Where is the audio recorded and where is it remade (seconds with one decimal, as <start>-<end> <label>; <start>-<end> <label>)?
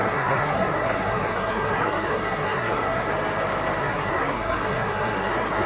0.0-3.1 remade; 3.1-3.8 recorded; 3.8-5.7 remade